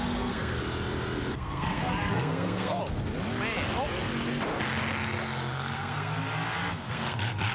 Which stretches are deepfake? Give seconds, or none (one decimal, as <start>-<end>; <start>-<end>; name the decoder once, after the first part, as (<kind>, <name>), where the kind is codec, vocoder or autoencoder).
0.0-0.6 (codec, SNAC); 1.3-2.8; 5.5-6.1; 6.7-7.5